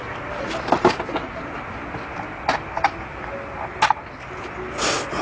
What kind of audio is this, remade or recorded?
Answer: recorded